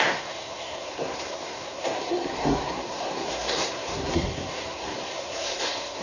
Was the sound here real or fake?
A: fake